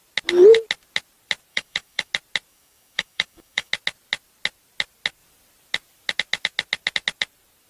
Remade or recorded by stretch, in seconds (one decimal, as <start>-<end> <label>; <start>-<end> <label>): 0.0-1.5 recorded; 1.5-2.1 remade; 2.1-2.5 recorded; 2.5-3.7 remade; 3.7-7.7 recorded